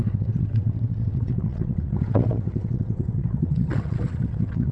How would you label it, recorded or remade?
remade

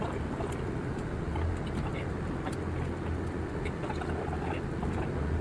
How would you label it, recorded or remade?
recorded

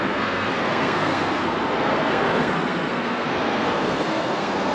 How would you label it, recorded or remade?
remade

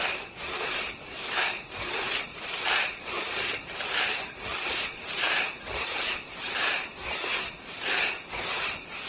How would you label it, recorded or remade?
remade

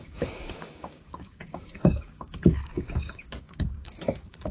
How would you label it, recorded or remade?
remade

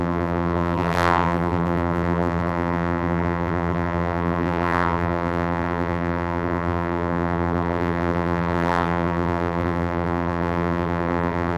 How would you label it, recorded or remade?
remade